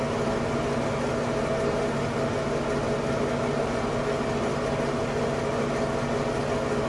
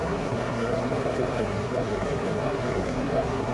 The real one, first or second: first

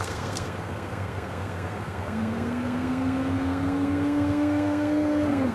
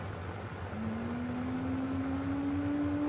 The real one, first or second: second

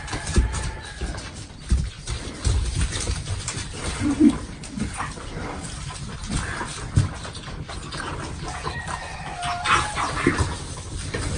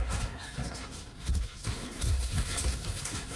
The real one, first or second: first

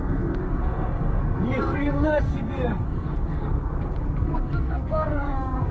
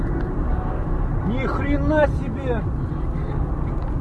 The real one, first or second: second